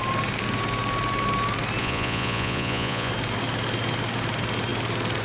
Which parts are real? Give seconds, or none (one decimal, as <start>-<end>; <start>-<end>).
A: 0.0-1.8; 3.1-5.2